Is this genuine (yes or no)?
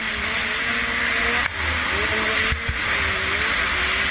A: yes